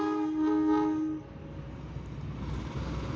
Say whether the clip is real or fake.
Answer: real